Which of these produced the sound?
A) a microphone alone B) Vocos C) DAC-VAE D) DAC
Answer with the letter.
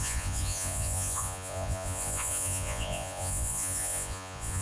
B